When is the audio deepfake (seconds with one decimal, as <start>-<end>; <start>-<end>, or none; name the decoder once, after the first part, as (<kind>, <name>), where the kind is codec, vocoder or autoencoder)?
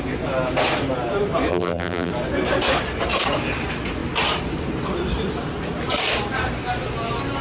1.5-2.1 (vocoder, BigVGAN v2)